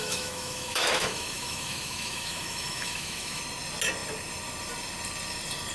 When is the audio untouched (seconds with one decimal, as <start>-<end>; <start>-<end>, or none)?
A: 3.4-5.7